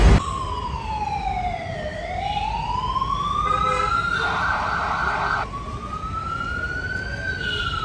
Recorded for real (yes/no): yes